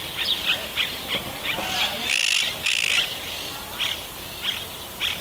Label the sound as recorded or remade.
recorded